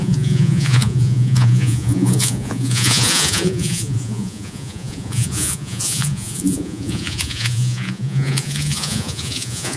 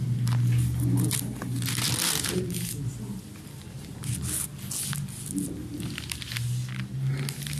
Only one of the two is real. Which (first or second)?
second